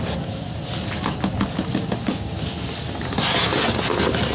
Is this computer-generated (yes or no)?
no